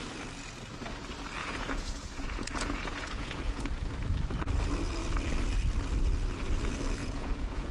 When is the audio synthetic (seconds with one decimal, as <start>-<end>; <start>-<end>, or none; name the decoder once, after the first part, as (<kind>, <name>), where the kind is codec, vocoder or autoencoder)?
1.4-3.6 (vocoder, Vocos); 7.0-7.7